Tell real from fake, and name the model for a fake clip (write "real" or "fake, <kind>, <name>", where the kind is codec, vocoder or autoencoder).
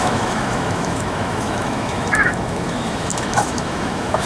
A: fake, autoencoder, DAC-VAE